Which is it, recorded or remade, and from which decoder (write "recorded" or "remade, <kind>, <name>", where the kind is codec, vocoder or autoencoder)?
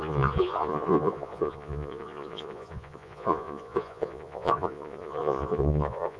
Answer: remade, vocoder, Vocos